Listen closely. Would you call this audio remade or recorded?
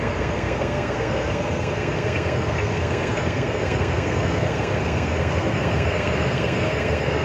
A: remade